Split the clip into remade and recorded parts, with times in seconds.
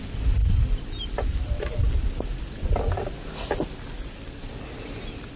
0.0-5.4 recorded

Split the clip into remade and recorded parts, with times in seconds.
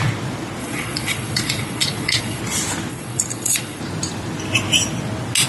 0.0-0.6 recorded; 0.6-2.4 remade; 2.4-2.9 recorded; 2.9-3.8 remade; 3.8-5.5 recorded